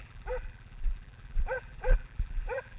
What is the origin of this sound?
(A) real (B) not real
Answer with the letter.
B